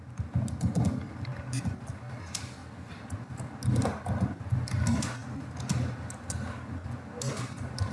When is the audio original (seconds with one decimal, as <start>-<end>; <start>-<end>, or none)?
0.0-7.9

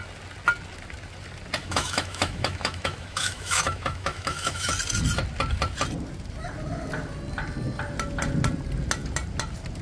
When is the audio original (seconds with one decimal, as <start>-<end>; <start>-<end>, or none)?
0.0-1.6; 4.7-9.8